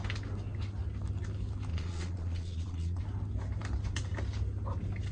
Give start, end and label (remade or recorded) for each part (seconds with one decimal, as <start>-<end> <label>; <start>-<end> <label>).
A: 0.0-1.7 recorded; 1.7-3.0 remade; 3.0-5.1 recorded